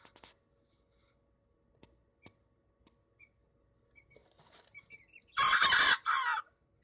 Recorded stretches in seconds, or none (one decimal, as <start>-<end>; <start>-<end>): 0.0-6.8